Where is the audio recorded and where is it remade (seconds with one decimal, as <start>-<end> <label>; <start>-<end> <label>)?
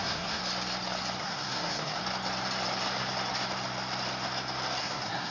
0.0-0.4 remade; 0.4-1.2 recorded; 1.2-2.0 remade; 2.0-4.8 recorded; 4.8-5.3 remade